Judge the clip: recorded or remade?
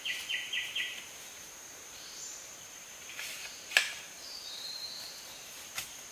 remade